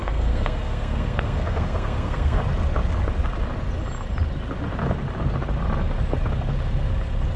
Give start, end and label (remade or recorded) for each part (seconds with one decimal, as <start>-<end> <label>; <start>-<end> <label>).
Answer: 0.0-2.4 remade; 2.4-7.4 recorded